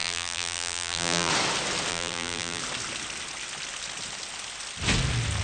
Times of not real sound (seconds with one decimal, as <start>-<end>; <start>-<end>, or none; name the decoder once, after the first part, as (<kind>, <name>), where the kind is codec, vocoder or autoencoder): 0.0-1.3 (vocoder, BigVGAN v2); 1.9-2.6